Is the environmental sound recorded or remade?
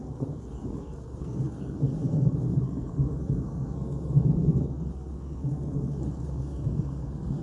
remade